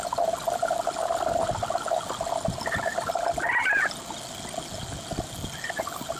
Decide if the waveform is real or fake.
real